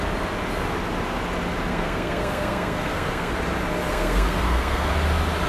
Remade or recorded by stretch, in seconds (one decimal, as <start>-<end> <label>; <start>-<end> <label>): 0.0-1.7 recorded; 1.7-3.3 remade; 3.3-3.9 recorded; 3.9-4.9 remade; 4.9-5.5 recorded